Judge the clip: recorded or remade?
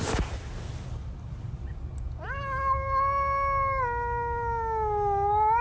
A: recorded